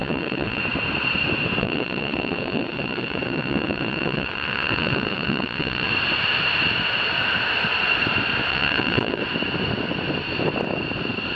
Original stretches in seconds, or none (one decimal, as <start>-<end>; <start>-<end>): 0.6-1.6; 5.9-8.5; 9.2-11.4